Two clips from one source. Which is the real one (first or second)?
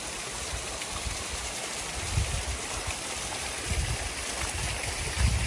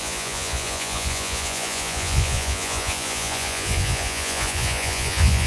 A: first